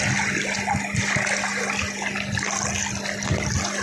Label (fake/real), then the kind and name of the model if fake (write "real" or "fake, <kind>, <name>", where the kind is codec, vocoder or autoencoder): real